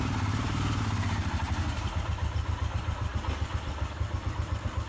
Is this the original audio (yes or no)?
no